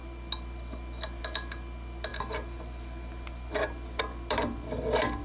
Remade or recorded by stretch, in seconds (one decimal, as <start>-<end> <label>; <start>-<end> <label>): 0.0-5.2 recorded